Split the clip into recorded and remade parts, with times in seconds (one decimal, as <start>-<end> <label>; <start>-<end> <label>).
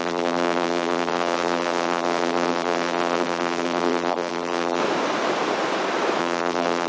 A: 0.0-4.8 remade; 4.8-6.2 recorded; 6.2-6.9 remade